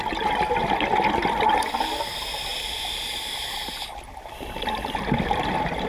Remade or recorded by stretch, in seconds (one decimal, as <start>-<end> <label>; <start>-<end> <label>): 0.0-5.9 recorded